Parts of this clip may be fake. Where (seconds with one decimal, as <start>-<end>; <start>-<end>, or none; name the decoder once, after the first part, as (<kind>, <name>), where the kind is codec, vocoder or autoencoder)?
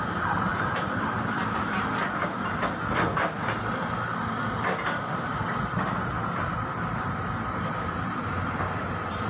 0.5-1.9 (vocoder, BigVGAN v2)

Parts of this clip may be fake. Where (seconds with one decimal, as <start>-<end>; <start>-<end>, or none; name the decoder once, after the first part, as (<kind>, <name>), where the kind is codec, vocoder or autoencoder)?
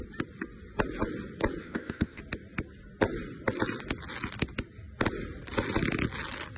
1.6-2.2 (codec, ZipCodec)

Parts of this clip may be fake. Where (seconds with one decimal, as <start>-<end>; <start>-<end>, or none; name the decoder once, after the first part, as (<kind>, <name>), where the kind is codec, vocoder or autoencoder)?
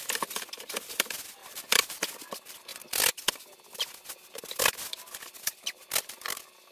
1.4-2.1 (vocoder, BigVGAN v2)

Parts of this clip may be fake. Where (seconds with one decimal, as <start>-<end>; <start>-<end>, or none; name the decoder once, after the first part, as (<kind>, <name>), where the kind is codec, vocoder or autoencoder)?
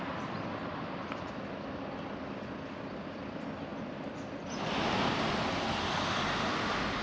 none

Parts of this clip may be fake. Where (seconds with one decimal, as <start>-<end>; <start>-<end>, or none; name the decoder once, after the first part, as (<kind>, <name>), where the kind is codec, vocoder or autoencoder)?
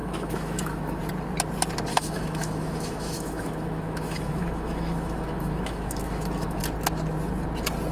0.0-1.0 (autoencoder, DAC-VAE); 1.9-6.6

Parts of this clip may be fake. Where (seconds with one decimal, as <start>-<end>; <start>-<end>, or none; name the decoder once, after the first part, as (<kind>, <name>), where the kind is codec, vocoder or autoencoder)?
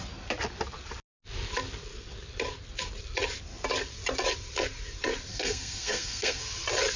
5.3-6.4 (codec, SNAC)